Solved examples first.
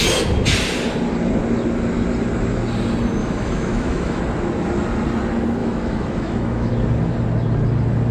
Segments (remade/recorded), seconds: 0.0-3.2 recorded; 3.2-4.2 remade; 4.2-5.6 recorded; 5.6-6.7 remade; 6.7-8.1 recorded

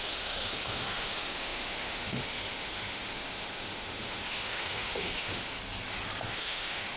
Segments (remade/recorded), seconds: 0.0-5.5 remade; 5.5-6.2 recorded; 6.2-7.0 remade

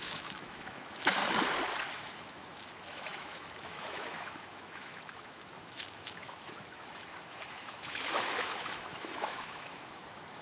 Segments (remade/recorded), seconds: 0.0-1.2 remade; 1.2-1.9 recorded; 1.9-10.4 remade

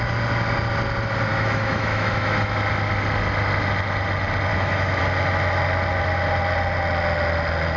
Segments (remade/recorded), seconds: 0.0-1.3 recorded; 1.3-2.6 remade; 2.6-4.5 recorded; 4.5-5.0 remade; 5.0-7.8 recorded

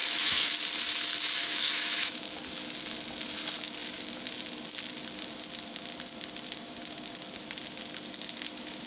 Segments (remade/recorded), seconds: 0.0-0.5 remade; 0.5-1.4 recorded; 1.4-2.2 remade; 2.2-8.9 recorded

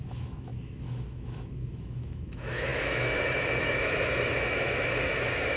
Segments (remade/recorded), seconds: 0.0-5.6 remade

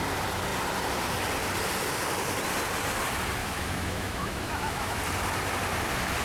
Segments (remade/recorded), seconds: 0.0-3.4 recorded; 3.4-5.0 remade; 5.0-6.2 recorded